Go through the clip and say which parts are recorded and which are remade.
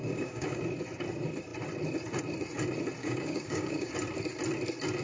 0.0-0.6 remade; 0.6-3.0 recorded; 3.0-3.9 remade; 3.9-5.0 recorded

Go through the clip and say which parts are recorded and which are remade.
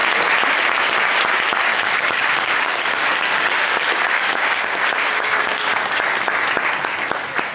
0.0-1.7 recorded; 1.7-6.0 remade; 6.0-7.5 recorded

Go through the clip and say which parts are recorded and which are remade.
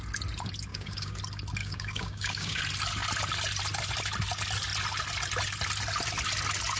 0.0-0.7 recorded; 0.7-1.2 remade; 1.2-1.6 recorded; 1.6-2.6 remade; 2.6-6.8 recorded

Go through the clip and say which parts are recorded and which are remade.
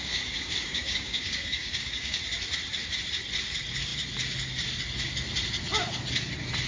0.0-2.2 remade; 2.2-6.7 recorded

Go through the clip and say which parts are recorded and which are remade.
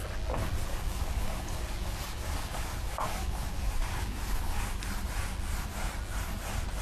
0.0-0.7 recorded; 0.7-4.8 remade; 4.8-6.8 recorded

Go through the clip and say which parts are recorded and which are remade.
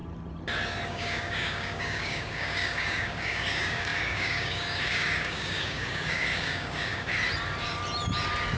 0.0-0.9 recorded; 0.9-7.1 remade; 7.1-8.6 recorded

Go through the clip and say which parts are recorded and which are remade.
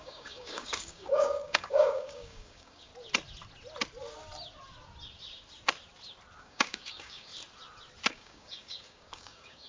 0.0-2.9 remade; 2.9-6.4 recorded; 6.4-7.3 remade; 7.3-8.1 recorded; 8.1-9.7 remade